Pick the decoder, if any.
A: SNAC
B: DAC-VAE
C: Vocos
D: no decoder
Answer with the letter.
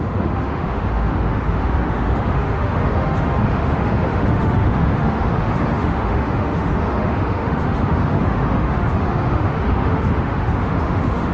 B